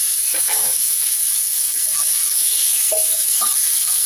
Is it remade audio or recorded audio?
remade